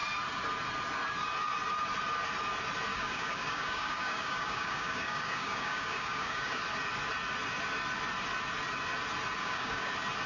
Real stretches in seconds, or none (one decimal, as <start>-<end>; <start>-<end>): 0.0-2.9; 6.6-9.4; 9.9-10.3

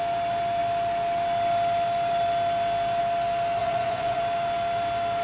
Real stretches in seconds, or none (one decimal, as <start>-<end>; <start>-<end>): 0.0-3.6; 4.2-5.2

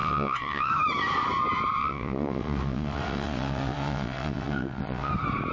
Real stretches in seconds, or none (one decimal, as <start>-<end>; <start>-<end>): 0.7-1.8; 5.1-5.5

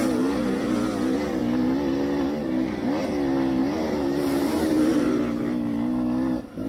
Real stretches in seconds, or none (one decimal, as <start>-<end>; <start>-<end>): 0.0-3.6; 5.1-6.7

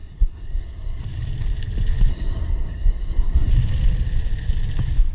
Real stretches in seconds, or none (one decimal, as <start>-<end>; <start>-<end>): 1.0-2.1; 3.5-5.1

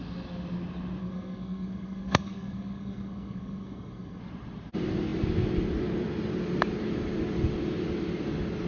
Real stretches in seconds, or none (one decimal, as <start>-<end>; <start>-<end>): 0.0-1.0; 4.2-8.7